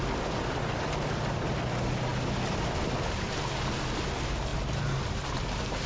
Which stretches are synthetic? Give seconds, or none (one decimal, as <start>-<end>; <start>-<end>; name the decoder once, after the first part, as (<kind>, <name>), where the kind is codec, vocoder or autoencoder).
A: none